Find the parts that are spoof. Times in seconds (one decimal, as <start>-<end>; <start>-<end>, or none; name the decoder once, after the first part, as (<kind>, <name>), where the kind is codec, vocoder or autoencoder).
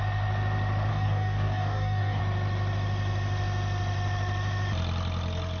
0.9-2.2 (codec, DAC)